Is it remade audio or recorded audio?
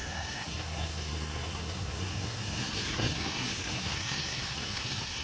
remade